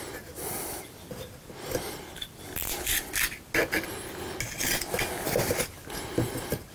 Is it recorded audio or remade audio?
recorded